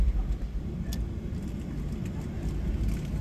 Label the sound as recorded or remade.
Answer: recorded